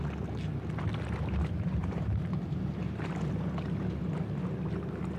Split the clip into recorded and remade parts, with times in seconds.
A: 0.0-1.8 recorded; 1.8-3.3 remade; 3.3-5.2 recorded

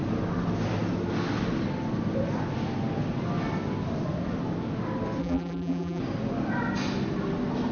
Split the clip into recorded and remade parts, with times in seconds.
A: 0.0-5.2 recorded; 5.2-6.0 remade; 6.0-7.7 recorded

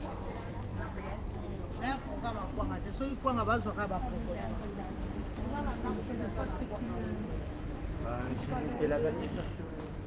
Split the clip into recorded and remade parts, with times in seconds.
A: 0.0-3.1 remade; 3.1-3.9 recorded; 3.9-10.1 remade

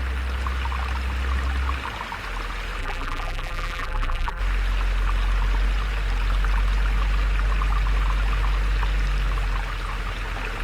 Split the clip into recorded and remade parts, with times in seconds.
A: 0.0-2.8 recorded; 2.8-4.4 remade; 4.4-10.6 recorded

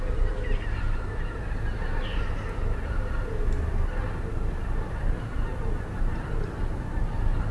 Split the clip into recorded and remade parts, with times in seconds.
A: 0.0-7.5 recorded

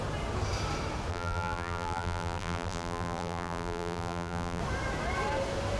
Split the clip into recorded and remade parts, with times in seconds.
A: 0.0-1.1 recorded; 1.1-4.6 remade; 4.6-5.8 recorded